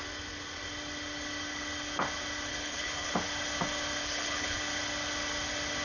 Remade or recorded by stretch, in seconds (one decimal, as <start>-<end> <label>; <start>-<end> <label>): 0.0-2.5 recorded; 2.5-3.1 remade; 3.1-4.0 recorded; 4.0-4.6 remade; 4.6-5.8 recorded